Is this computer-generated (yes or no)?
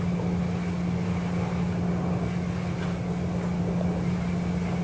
no